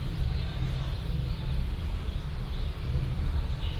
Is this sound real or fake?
real